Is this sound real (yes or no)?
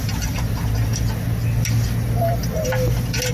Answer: yes